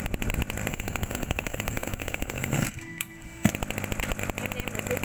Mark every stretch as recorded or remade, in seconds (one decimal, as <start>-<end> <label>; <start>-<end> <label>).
0.0-0.7 recorded; 0.7-3.5 remade; 3.5-5.0 recorded